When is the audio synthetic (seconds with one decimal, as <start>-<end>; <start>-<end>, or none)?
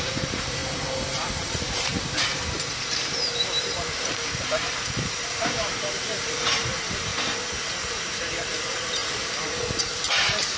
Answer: 0.0-0.6; 1.5-7.1; 7.6-9.0; 9.8-10.6